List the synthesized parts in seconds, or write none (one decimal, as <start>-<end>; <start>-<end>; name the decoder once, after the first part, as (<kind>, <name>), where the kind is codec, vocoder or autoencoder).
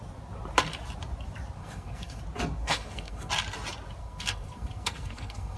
1.6-2.2 (codec, SNAC); 2.6-3.3; 4.0-5.6